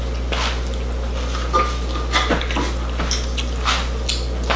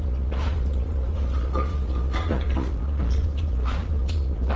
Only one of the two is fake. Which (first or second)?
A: second